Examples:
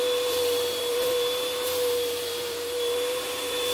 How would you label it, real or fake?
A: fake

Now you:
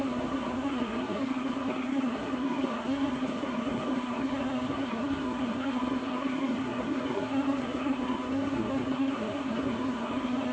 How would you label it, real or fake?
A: fake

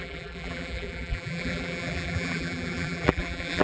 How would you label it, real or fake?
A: fake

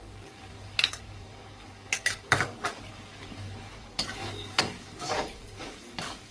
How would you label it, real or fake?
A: fake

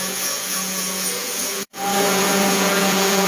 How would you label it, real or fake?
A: fake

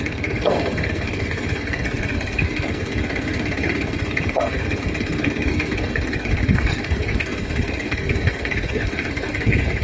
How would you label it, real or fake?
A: fake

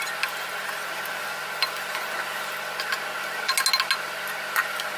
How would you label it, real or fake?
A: real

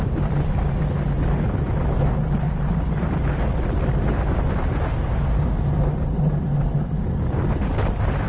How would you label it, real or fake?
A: real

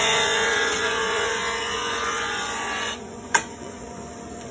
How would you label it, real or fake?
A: fake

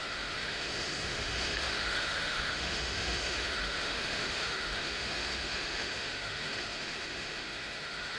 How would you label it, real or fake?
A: fake